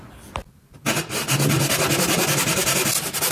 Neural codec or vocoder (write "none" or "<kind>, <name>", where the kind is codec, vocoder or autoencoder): none